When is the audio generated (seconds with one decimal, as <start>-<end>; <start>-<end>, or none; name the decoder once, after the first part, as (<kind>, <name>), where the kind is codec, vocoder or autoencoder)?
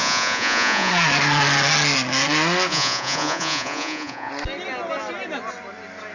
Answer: 0.0-0.9 (vocoder, Vocos); 2.7-4.3